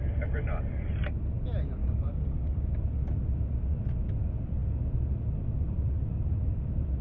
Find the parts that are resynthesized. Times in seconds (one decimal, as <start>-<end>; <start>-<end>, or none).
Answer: 1.8-2.7